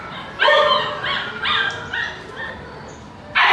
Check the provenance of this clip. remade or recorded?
recorded